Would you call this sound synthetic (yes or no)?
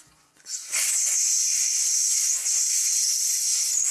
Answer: yes